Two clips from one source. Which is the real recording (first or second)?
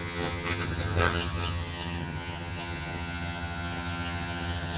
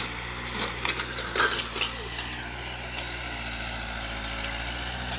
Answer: second